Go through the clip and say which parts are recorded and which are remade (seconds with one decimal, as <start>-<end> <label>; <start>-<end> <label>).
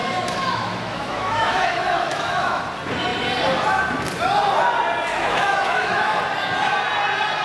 0.0-2.6 remade; 2.6-5.1 recorded; 5.1-6.2 remade; 6.2-7.4 recorded